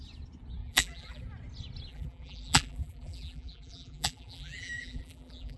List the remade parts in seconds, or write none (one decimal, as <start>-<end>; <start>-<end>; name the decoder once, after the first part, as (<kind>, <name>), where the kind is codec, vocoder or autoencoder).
0.6-1.2 (vocoder, BigVGAN v2); 1.9-5.6